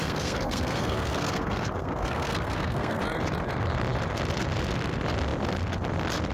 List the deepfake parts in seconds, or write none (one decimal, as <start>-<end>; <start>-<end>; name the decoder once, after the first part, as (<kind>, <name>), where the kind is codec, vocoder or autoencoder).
0.0-3.0 (codec, SNAC)